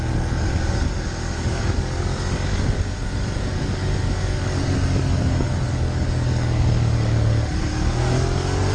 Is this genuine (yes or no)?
no